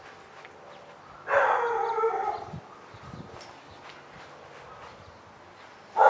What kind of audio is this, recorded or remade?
recorded